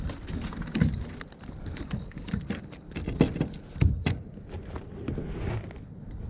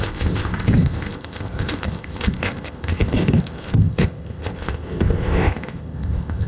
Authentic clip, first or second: first